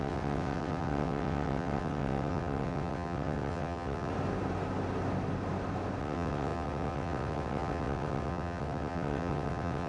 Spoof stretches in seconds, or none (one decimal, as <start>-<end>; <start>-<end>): 0.0-4.1; 6.0-9.9